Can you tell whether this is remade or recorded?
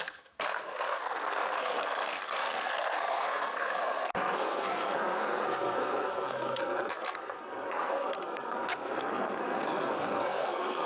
remade